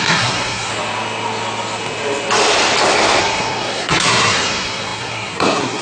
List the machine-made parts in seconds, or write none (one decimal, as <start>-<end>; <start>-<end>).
0.0-0.7; 3.2-5.8